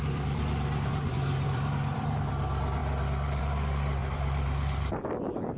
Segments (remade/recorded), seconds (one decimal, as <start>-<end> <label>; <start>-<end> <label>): 0.0-2.3 remade; 2.3-4.0 recorded; 4.0-4.9 remade; 4.9-5.6 recorded